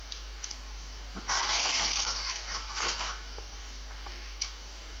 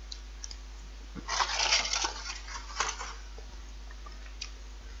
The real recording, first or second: second